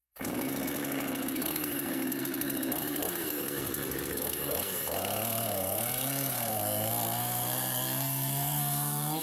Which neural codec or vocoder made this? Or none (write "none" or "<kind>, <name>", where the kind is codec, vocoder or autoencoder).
codec, SNAC